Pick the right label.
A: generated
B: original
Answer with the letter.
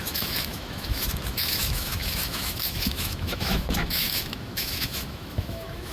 A